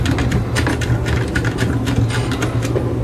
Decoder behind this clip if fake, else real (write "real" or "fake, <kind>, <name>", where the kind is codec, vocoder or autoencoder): real